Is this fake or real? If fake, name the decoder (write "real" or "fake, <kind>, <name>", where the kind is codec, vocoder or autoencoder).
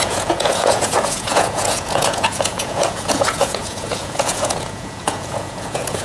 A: fake, vocoder, Vocos